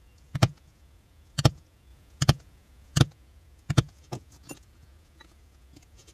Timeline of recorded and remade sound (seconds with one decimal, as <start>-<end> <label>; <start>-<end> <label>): 0.0-6.1 remade